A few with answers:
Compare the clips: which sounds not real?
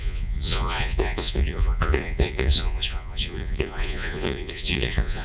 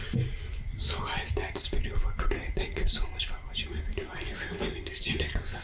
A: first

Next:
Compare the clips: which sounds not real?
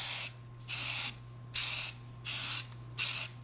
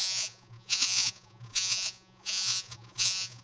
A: second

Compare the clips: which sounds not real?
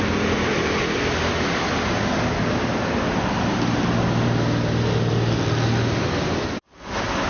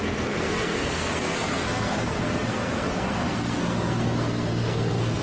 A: second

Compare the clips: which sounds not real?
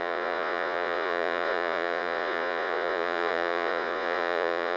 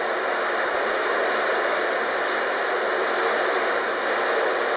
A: first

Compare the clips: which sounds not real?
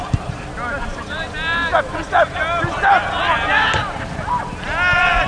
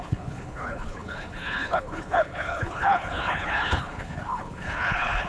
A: second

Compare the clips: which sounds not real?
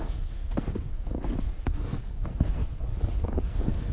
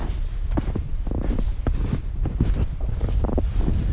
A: first